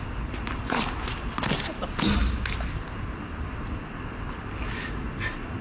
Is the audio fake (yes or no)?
no